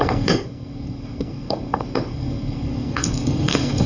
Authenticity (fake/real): fake